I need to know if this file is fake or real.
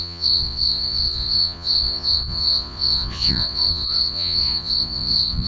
fake